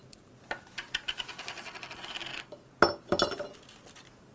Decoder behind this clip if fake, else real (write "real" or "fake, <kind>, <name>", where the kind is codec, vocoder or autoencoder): real